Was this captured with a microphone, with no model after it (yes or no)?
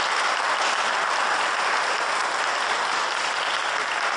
yes